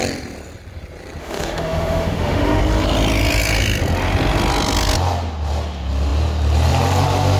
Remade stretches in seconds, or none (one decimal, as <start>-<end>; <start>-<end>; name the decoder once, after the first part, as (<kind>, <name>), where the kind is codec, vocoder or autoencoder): 1.2-2.6 (autoencoder, DAC-VAE)